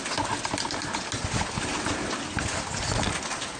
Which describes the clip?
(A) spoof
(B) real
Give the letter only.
B